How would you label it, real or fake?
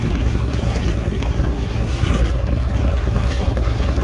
fake